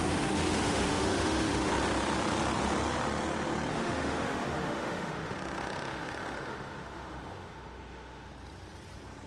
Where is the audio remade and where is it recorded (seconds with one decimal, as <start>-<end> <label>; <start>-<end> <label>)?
0.0-1.7 remade; 1.7-3.7 recorded; 3.7-8.3 remade; 8.3-9.3 recorded